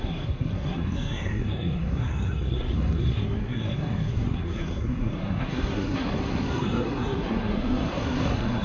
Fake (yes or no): yes